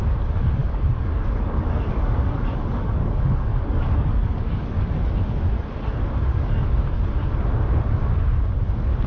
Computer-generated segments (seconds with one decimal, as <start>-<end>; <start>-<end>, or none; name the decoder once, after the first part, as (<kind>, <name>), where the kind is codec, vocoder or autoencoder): 0.6-4.9 (codec, DAC); 6.3-7.0

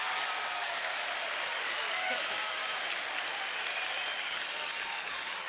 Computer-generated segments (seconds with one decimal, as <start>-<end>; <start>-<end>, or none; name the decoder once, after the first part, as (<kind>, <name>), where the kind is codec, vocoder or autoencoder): 0.0-0.8 (codec, DAC); 1.5-2.6; 4.2-5.5

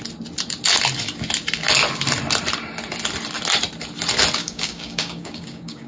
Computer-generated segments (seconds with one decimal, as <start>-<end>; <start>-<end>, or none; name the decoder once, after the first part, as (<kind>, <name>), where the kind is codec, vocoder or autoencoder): 4.4-5.9 (codec, DAC)